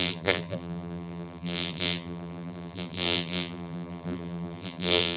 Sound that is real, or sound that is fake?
fake